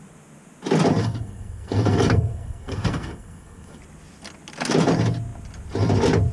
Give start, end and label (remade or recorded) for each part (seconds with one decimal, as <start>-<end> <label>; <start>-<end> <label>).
0.0-1.0 recorded; 1.0-3.8 remade; 3.8-6.3 recorded